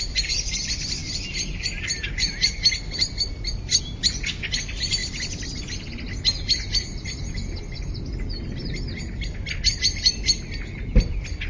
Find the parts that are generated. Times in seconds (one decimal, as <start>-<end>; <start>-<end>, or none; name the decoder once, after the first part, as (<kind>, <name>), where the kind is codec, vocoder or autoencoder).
none